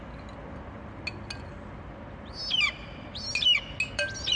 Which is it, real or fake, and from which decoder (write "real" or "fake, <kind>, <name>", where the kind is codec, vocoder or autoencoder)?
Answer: real